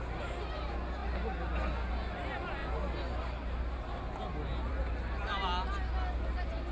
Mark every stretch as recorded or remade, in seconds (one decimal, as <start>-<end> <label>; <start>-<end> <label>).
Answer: 0.0-6.7 recorded